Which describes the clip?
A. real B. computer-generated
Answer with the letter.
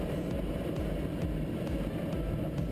A